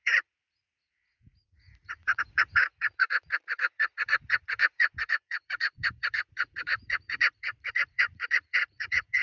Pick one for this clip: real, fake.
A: fake